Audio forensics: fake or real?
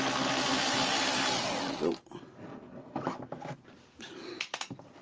real